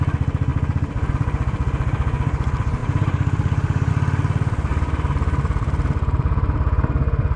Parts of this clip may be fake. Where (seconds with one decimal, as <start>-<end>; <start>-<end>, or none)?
2.8-3.9; 4.7-6.9